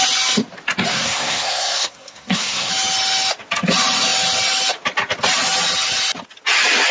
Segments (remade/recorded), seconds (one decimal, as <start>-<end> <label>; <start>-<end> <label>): 0.0-0.9 recorded; 0.9-2.7 remade; 2.7-6.9 recorded